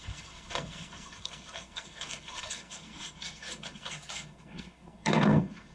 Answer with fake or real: fake